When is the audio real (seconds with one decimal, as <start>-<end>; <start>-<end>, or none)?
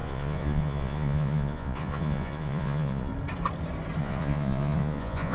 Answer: 3.1-4.0